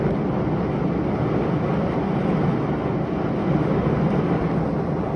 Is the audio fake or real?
real